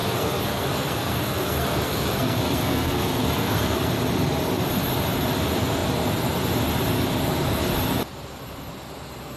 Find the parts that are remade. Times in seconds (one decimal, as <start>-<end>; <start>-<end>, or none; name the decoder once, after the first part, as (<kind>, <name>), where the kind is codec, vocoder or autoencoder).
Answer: 0.0-3.9 (codec, SNAC)